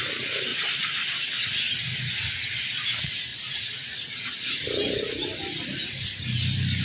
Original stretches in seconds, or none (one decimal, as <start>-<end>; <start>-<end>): 0.0-6.8